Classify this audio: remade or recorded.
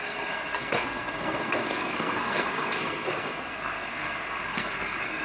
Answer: remade